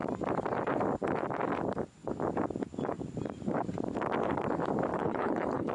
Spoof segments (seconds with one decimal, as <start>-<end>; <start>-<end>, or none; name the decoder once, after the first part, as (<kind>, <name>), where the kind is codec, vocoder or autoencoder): 4.9-5.7 (codec, HILCodec)

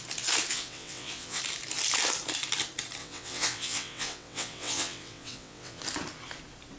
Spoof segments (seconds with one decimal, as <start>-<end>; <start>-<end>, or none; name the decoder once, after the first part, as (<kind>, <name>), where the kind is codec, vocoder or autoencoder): 0.5-1.4 (vocoder, WaveNeXt); 3.0-5.8

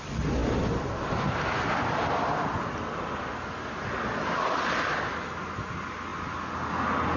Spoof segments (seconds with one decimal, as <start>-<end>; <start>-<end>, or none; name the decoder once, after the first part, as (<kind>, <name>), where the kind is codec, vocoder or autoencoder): none

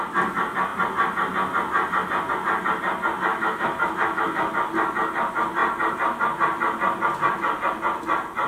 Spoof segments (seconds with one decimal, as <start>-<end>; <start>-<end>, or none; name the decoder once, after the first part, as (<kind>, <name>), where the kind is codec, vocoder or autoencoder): 3.3-4.5 (autoencoder, DAC-VAE)